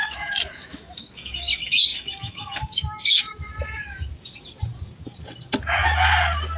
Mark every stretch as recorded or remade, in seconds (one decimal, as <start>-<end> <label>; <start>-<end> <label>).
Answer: 0.0-4.1 remade; 4.1-6.6 recorded

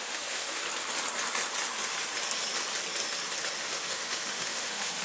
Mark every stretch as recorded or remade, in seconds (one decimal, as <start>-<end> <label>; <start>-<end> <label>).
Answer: 0.0-0.6 remade; 0.6-3.6 recorded; 3.6-5.0 remade

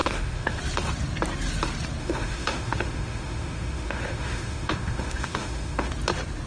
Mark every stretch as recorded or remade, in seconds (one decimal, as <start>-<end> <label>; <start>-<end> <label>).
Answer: 0.0-0.6 remade; 0.6-2.0 recorded; 2.0-5.9 remade; 5.9-6.5 recorded